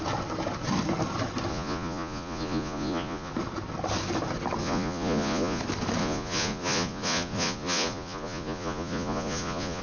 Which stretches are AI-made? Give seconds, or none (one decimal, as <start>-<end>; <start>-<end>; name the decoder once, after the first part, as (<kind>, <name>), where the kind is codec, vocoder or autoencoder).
1.5-3.3 (vocoder, Vocos); 4.6-5.6; 6.0-9.8